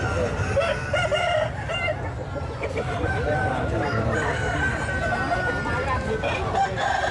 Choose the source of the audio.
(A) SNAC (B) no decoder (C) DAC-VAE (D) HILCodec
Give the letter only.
B